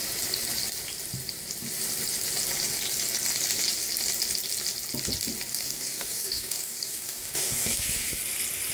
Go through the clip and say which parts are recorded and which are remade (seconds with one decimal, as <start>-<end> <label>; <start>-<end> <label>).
0.0-5.5 recorded; 5.5-8.2 remade; 8.2-8.7 recorded